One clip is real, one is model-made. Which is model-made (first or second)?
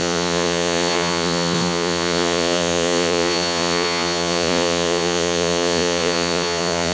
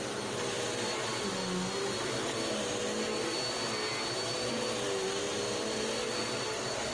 first